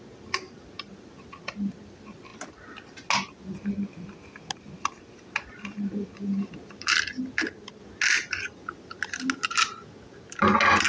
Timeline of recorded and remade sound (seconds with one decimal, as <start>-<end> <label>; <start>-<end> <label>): 0.0-10.9 recorded